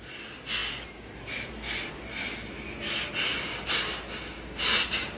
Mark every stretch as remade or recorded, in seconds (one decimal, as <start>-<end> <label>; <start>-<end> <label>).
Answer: 0.0-5.2 recorded